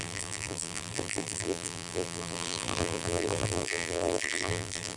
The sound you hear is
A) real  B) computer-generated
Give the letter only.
B